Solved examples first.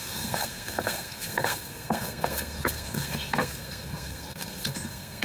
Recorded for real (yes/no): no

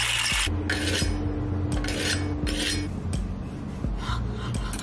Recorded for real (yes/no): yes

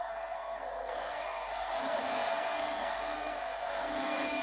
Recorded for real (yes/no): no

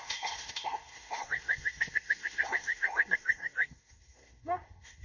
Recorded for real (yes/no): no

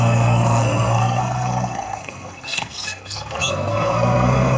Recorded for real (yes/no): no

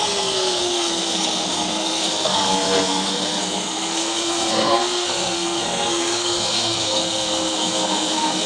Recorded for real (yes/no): no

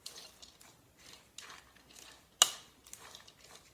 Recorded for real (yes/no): yes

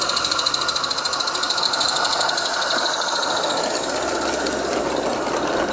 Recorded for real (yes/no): yes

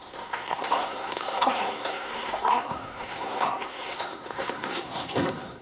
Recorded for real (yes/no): no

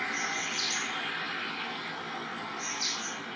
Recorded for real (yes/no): yes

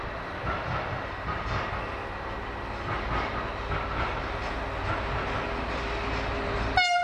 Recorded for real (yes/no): yes